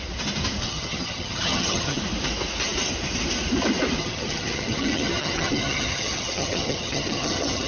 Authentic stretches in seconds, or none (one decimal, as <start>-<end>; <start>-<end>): 0.0-0.6; 2.0-4.0